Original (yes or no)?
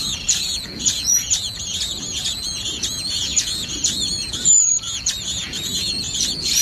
no